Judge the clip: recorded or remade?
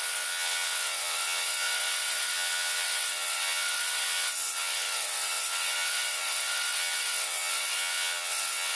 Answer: remade